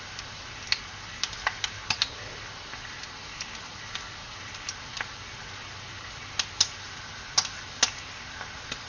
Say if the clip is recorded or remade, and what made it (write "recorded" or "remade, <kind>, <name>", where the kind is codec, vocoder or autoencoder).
recorded